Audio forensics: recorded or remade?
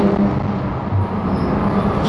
recorded